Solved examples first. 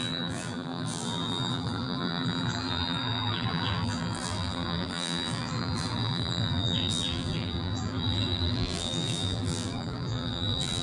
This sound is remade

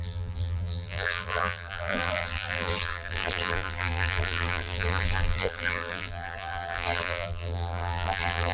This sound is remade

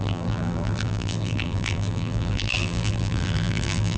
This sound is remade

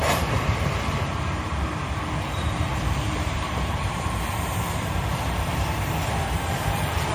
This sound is remade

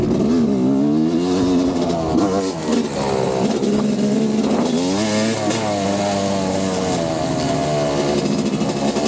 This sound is recorded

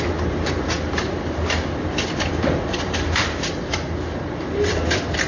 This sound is remade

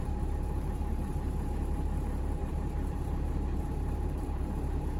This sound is remade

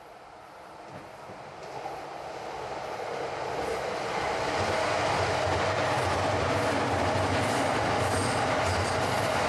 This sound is recorded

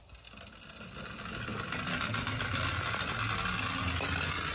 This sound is recorded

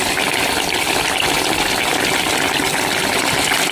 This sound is recorded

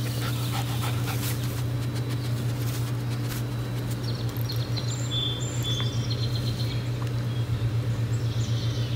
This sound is recorded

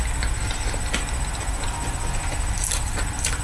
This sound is recorded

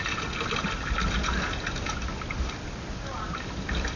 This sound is recorded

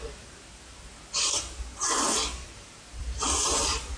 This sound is remade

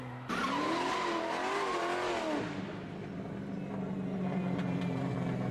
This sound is recorded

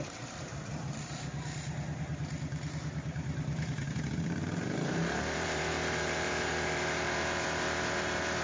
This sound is remade